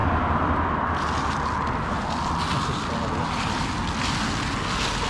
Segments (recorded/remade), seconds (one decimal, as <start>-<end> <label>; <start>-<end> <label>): 0.0-5.1 recorded